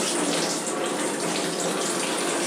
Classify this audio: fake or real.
real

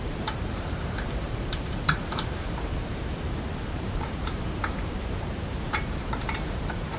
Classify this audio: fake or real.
fake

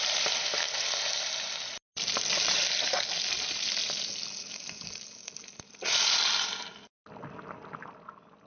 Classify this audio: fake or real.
real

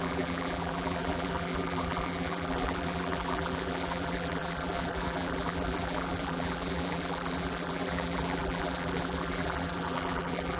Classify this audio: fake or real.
fake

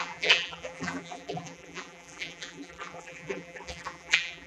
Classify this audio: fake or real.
fake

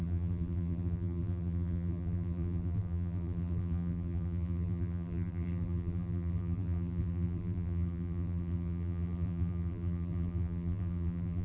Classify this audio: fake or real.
fake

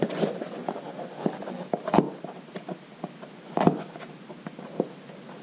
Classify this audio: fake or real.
real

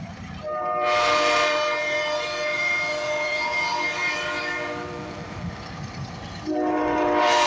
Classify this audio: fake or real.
fake